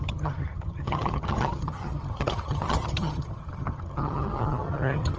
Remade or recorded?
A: remade